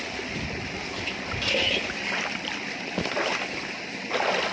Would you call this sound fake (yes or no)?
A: no